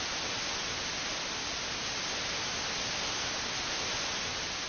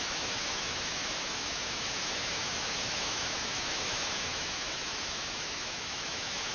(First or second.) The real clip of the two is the first